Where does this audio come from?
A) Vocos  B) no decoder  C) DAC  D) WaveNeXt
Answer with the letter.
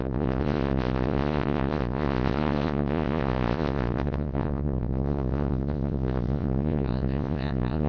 A